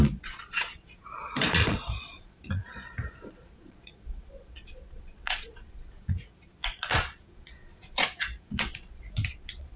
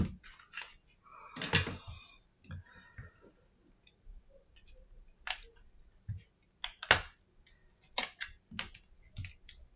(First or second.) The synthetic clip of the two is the first